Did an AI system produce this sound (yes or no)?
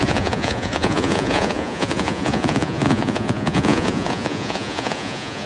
yes